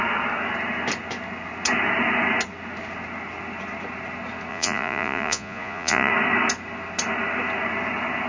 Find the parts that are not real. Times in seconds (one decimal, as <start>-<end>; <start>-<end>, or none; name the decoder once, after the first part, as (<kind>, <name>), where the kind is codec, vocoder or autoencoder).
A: 4.5-6.1 (vocoder, Vocos)